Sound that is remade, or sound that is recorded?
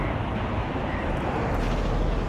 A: recorded